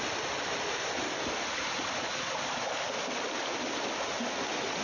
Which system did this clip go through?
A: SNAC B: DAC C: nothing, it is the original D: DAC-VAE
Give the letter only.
C